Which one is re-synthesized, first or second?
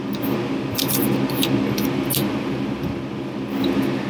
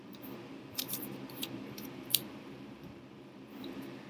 second